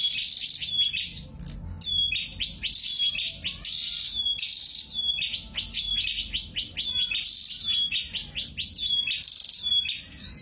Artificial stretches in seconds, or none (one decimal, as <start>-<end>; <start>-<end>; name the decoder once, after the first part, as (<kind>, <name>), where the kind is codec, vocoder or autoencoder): none